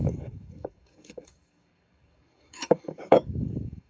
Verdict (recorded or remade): remade